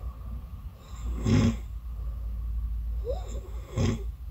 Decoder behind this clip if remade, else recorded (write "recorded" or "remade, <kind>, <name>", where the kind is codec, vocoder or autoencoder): recorded